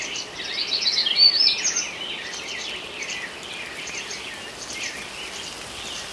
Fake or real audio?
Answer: real